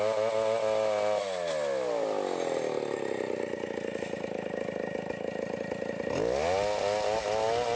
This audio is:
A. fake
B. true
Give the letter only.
B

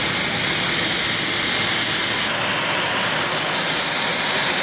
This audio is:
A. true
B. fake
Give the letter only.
A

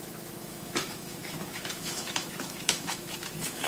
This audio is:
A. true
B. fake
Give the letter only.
B